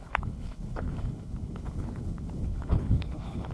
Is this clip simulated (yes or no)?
yes